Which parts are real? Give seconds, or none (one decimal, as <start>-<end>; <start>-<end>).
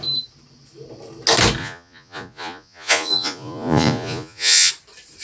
0.0-1.6; 4.7-5.2